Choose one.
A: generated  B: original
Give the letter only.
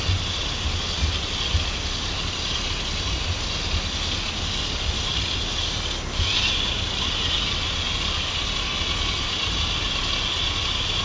B